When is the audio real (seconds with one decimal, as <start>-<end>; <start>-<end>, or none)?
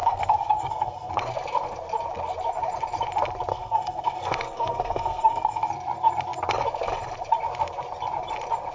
1.1-3.5; 5.7-8.7